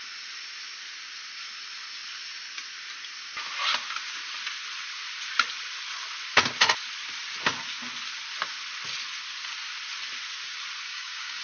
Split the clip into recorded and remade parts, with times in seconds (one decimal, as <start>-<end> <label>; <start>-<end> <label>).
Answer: 0.0-10.9 recorded; 10.9-11.4 remade